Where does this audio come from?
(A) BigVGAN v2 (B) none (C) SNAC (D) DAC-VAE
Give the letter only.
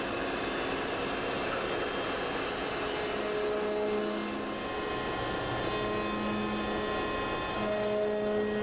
B